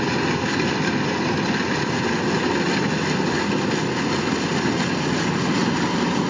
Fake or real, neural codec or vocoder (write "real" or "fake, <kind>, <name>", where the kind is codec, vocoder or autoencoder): real